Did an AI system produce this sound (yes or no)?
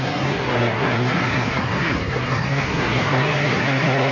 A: yes